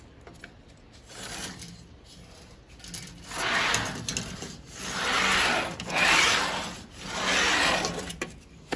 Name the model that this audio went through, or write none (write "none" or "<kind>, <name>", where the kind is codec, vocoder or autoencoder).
none